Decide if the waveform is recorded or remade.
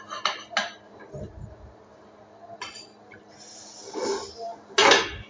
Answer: recorded